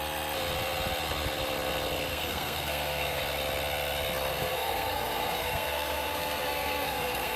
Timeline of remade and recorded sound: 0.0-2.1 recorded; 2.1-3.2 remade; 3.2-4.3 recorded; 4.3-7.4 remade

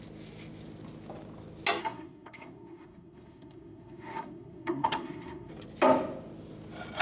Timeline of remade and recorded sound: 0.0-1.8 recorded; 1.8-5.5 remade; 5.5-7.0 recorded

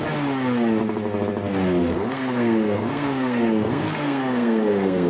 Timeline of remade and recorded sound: 0.0-1.8 recorded; 1.8-5.1 remade

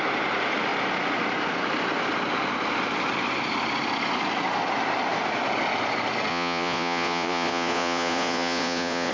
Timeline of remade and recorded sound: 0.0-6.3 recorded; 6.3-9.1 remade

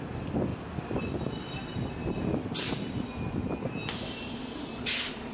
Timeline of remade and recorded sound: 0.0-5.3 recorded

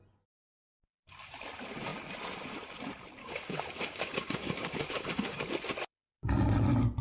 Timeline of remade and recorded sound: 0.0-3.2 recorded; 3.2-5.5 remade; 5.5-7.0 recorded

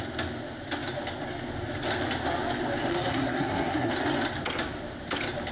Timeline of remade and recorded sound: 0.0-2.9 recorded; 2.9-3.9 remade; 3.9-5.5 recorded

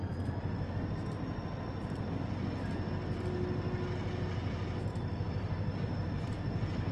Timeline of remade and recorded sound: 0.0-4.9 recorded; 4.9-6.9 remade